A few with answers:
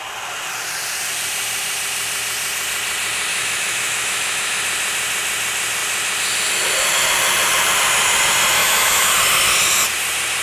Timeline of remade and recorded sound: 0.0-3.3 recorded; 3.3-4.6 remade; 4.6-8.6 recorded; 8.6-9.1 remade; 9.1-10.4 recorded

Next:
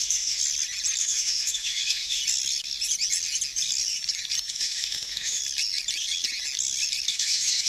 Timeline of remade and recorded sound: 0.0-0.4 remade; 0.4-1.0 recorded; 1.0-2.2 remade; 2.2-4.5 recorded; 4.5-5.4 remade; 5.4-7.1 recorded; 7.1-7.7 remade

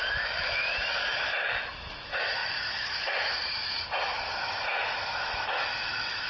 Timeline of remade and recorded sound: 0.0-6.3 remade

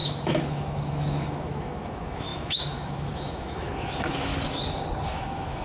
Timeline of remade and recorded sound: 0.0-4.3 remade; 4.3-5.1 recorded; 5.1-5.6 remade

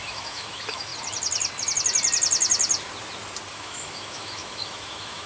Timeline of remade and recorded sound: 0.0-0.9 remade; 0.9-3.5 recorded; 3.5-5.3 remade